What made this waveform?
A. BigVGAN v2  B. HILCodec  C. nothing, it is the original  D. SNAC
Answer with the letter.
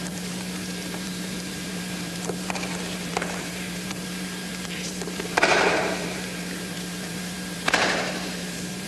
A